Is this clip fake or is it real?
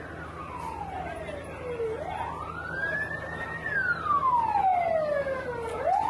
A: real